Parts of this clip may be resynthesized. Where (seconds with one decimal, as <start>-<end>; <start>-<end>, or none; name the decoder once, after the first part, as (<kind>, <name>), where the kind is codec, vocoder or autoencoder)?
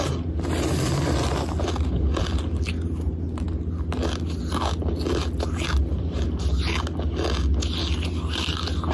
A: none